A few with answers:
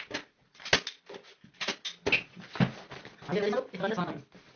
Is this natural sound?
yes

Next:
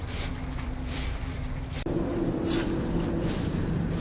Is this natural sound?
no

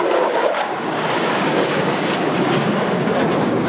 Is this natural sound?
no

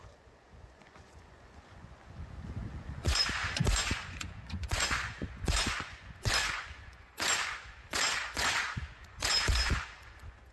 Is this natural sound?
no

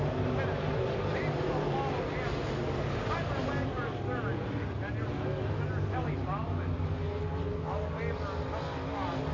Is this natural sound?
yes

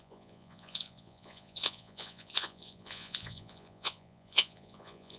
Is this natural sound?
no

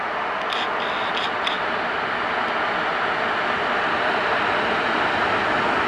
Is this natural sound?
yes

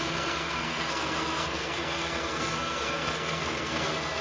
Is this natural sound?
no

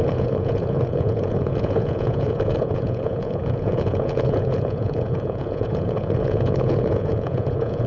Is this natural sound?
no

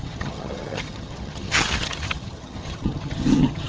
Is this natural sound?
no